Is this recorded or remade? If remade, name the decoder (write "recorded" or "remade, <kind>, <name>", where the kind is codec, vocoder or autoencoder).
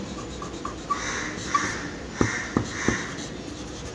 recorded